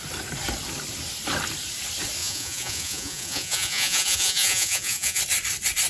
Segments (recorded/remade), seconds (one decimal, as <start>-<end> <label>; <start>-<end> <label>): 0.0-2.2 recorded; 2.2-5.2 remade; 5.2-5.9 recorded